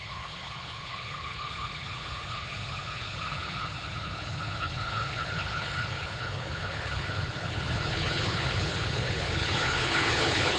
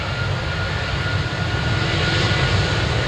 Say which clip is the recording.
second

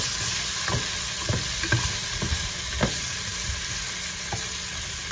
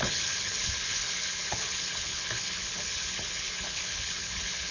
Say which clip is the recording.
first